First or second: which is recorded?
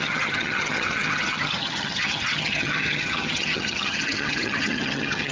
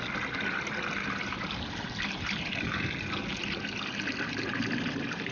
second